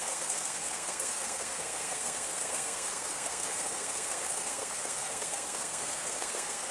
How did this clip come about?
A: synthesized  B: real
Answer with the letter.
A